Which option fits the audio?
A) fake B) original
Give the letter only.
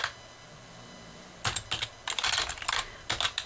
B